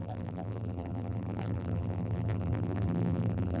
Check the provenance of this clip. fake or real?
fake